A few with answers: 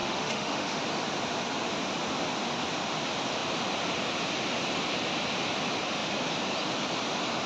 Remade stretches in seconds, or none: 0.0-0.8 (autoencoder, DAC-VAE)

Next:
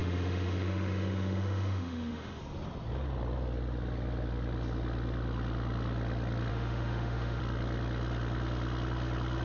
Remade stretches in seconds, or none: 0.0-2.4 (autoencoder, DAC-VAE); 6.5-7.4